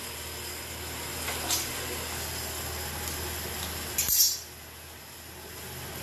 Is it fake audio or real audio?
real